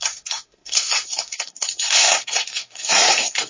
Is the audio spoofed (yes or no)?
yes